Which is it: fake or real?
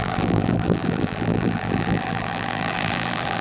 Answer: fake